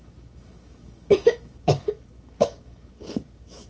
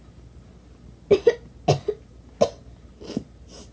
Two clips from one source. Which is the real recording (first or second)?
second